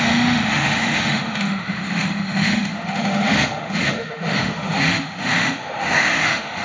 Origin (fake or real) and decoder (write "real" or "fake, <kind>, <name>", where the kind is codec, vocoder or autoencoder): fake, autoencoder, DAC-VAE